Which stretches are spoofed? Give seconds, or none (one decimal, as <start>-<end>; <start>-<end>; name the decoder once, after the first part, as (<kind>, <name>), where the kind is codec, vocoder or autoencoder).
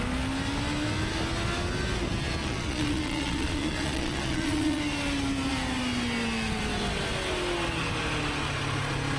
2.4-4.8 (vocoder, Vocos)